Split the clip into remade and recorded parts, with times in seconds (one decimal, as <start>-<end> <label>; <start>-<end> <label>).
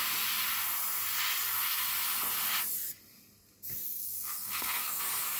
0.0-3.8 recorded; 3.8-5.0 remade; 5.0-5.4 recorded